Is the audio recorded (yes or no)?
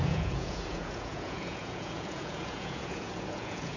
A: no